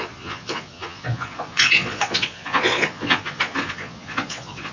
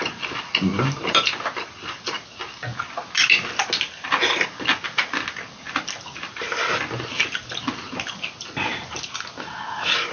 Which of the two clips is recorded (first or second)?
second